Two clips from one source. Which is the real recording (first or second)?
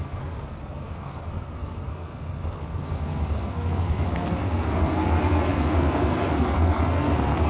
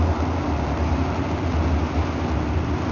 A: second